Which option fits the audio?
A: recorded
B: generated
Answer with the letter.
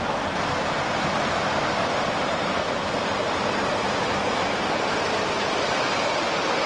B